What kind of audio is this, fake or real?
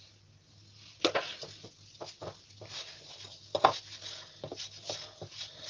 real